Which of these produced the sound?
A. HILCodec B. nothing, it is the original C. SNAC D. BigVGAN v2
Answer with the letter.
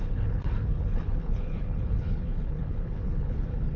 A